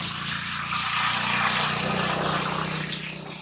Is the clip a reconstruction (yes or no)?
no